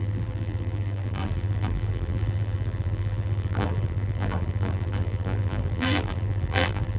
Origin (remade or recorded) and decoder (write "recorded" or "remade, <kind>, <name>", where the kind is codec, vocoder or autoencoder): remade, vocoder, BigVGAN v2